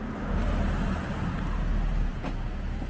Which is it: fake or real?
real